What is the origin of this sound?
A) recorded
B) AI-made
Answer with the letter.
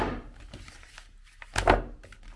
A